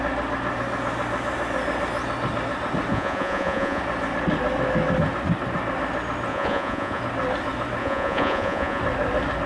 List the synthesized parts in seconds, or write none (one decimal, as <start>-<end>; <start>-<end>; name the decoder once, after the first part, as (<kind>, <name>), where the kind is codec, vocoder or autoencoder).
2.9-3.8 (vocoder, Vocos); 6.3-7.0; 7.8-8.8